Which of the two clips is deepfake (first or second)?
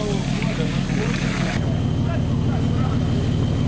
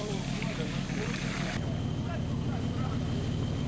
second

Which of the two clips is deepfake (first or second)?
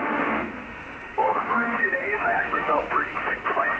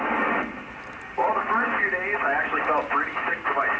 first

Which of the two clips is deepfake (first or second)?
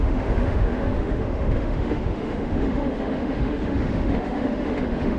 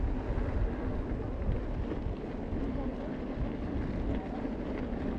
first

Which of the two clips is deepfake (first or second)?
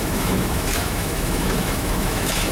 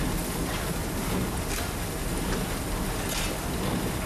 first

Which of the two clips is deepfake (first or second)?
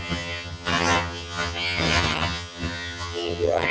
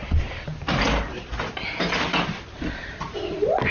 first